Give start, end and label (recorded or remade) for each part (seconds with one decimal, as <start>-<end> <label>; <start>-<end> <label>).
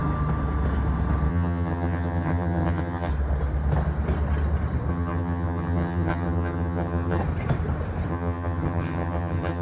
0.0-1.3 recorded; 1.3-3.1 remade; 3.1-4.9 recorded; 4.9-7.2 remade; 7.2-8.1 recorded; 8.1-9.6 remade